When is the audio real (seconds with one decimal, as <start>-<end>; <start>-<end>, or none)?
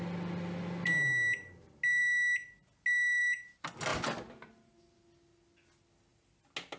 0.0-6.8